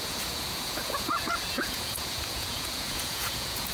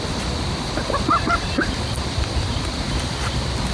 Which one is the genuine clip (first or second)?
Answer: second